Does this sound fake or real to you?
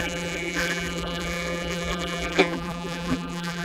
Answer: fake